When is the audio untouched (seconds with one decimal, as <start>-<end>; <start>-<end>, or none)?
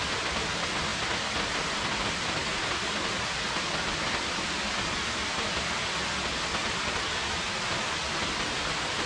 0.0-9.1